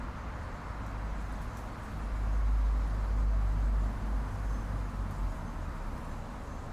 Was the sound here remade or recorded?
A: recorded